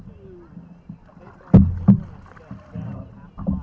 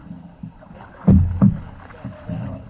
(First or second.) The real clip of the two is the first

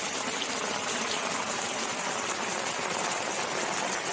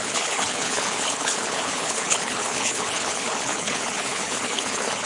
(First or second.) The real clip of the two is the first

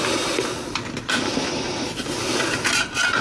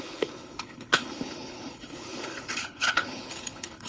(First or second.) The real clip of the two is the first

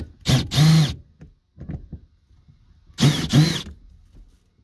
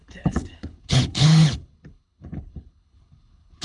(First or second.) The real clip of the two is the first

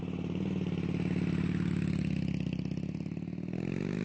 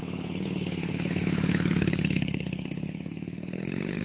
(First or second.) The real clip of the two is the first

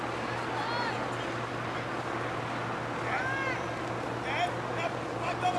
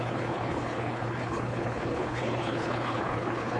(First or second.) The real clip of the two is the first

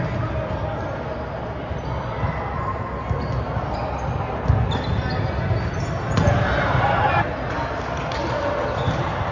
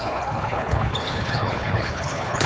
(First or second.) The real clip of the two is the first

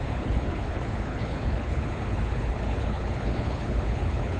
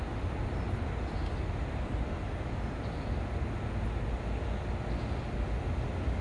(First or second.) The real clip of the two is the second